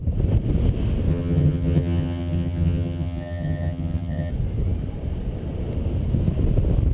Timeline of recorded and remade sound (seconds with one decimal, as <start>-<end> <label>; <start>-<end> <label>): 0.0-1.1 recorded; 1.1-4.3 remade; 4.3-6.9 recorded